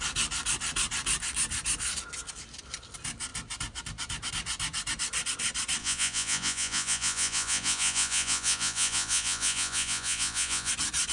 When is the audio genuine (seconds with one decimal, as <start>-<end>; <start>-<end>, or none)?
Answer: 0.0-5.8; 10.7-11.1